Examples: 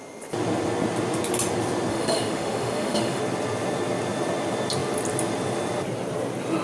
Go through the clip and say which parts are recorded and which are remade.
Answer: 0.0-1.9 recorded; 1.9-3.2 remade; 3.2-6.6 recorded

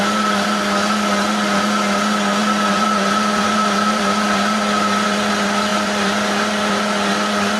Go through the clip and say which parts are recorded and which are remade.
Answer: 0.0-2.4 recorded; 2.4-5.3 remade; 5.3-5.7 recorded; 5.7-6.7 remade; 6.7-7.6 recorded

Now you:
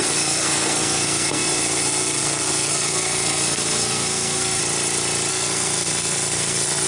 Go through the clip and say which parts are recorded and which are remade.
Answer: 0.0-4.6 remade; 4.6-5.3 recorded; 5.3-6.9 remade

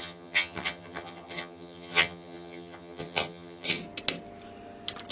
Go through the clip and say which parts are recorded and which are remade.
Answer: 0.0-3.8 remade; 3.8-5.1 recorded